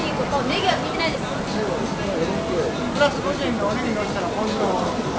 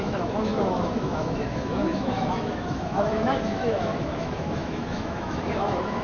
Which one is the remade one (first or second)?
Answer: second